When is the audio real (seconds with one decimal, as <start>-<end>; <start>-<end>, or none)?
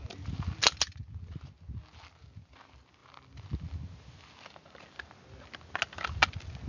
0.0-6.7